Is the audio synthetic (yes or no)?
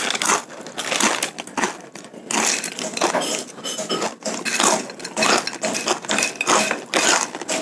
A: no